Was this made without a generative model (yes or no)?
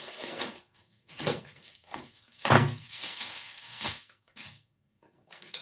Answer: no